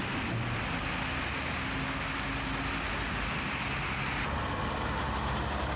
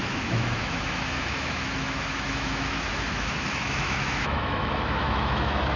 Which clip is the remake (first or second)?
second